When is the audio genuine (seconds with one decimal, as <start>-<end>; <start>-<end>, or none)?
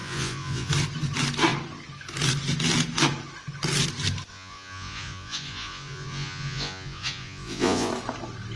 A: 0.7-4.3; 7.9-8.6